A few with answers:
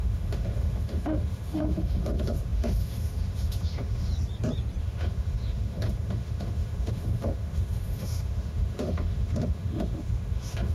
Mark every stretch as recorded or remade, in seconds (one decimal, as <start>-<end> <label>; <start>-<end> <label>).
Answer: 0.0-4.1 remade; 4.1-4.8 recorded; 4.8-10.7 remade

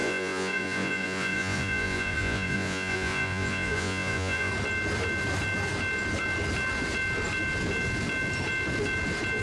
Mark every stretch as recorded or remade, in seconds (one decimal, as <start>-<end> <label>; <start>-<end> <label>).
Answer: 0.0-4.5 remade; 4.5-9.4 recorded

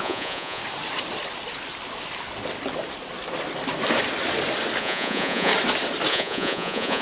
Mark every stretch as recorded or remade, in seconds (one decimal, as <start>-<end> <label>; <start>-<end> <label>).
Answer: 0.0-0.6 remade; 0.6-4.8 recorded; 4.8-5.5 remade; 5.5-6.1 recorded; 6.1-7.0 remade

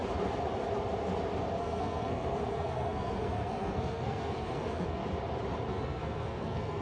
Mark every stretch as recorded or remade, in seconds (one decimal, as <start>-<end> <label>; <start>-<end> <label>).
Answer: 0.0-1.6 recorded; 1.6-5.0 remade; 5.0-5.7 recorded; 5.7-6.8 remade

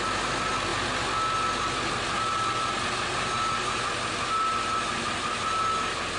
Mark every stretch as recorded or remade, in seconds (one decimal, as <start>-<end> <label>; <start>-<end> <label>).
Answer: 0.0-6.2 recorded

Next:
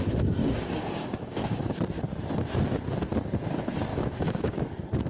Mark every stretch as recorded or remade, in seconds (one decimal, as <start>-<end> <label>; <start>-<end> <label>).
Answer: 0.0-0.4 recorded; 0.4-1.7 remade; 1.7-3.9 recorded; 3.9-4.6 remade; 4.6-5.1 recorded